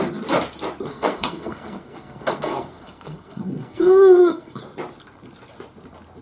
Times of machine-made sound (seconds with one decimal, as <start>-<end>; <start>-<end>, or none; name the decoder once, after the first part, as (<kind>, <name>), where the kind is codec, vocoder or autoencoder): 0.9-4.6 (codec, SNAC)